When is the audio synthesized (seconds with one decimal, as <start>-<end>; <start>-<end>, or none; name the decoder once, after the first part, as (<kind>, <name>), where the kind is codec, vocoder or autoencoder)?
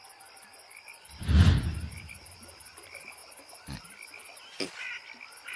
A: 0.0-3.2 (vocoder, BigVGAN v2)